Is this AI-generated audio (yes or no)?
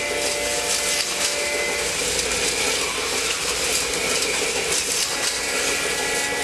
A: no